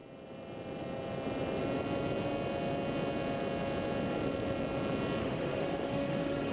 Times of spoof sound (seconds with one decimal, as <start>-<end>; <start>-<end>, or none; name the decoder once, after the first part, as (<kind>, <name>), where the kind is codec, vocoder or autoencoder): 5.2-6.5 (autoencoder, DAC-VAE)